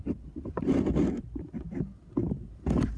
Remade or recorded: remade